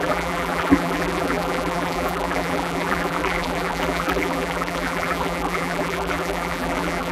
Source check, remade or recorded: remade